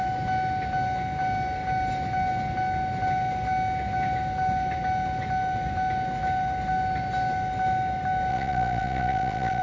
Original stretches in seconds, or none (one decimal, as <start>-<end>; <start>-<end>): 0.0-8.3